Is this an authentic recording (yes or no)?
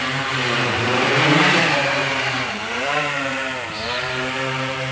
no